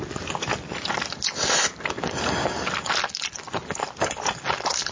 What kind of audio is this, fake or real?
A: real